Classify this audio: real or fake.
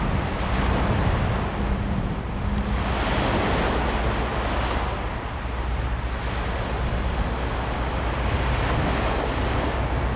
real